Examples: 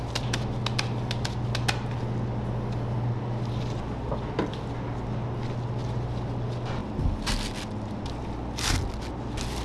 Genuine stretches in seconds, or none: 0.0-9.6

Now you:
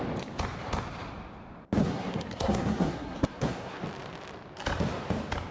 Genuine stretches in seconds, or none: 0.0-1.8; 3.8-5.5

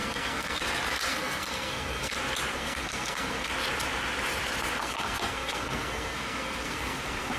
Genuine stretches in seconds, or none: 0.6-1.1; 2.1-2.5; 3.5-4.8

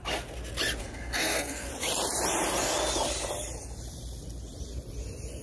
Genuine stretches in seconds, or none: 0.0-0.8; 1.7-5.4

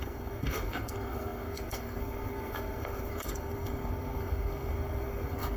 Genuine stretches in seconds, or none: none

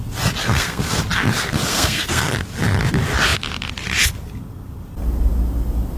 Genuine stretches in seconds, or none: 0.0-0.4; 1.0-1.7; 2.3-6.0